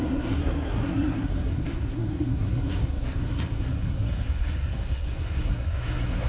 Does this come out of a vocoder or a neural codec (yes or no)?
yes